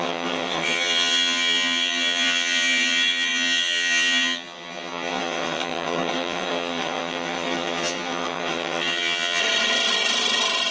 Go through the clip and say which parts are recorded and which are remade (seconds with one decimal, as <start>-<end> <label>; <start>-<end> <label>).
0.0-9.4 remade; 9.4-10.7 recorded